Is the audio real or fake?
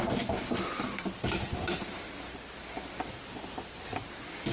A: real